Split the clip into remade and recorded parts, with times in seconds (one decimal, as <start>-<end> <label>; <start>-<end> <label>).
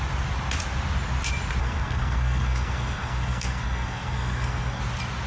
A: 0.0-1.6 recorded; 1.6-4.8 remade; 4.8-5.3 recorded